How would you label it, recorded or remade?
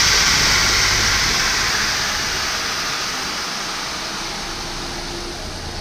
recorded